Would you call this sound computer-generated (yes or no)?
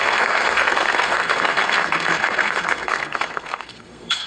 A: yes